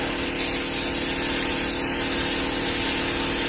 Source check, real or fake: real